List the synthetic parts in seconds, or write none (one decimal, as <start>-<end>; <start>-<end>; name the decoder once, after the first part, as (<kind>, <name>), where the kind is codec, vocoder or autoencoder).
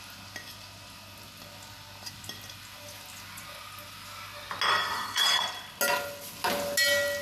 4.7-5.4 (codec, SNAC)